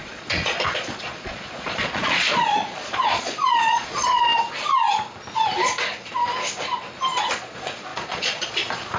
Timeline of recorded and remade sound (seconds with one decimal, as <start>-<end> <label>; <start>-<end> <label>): 0.0-4.3 remade; 4.3-7.2 recorded; 7.2-9.0 remade